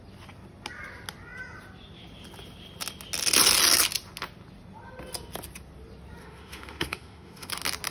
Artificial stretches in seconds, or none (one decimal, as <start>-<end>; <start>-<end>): 6.2-7.5